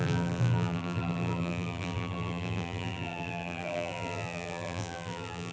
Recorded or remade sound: remade